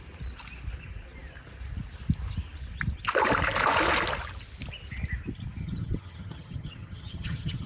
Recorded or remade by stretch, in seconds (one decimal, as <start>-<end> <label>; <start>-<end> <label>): 0.0-5.6 recorded; 5.6-7.7 remade